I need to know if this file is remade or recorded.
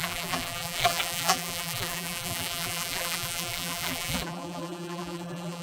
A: remade